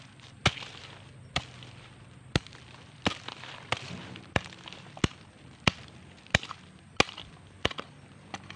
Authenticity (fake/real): real